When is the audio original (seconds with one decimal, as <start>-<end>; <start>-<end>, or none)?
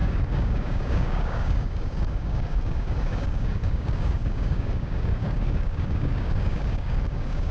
none